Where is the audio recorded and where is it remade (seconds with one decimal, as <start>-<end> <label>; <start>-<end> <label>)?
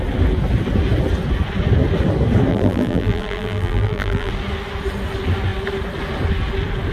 0.0-2.5 recorded; 2.5-4.3 remade; 4.3-6.9 recorded